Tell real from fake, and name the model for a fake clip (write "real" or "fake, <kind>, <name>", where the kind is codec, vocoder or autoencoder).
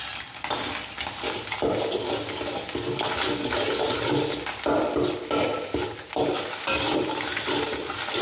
real